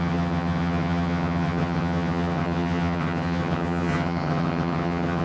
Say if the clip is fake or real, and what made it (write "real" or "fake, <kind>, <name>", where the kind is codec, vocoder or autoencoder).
fake, vocoder, HiFi-GAN